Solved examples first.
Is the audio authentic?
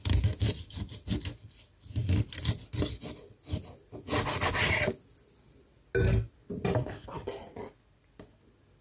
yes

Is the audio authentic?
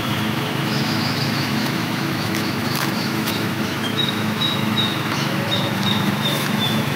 no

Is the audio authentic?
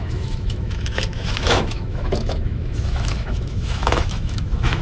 no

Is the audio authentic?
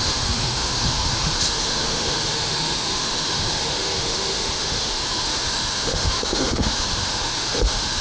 no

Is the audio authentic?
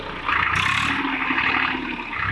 yes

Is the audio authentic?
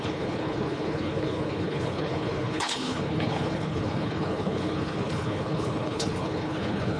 no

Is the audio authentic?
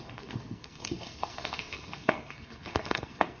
no